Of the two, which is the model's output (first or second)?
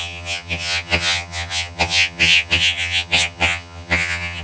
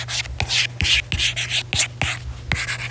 first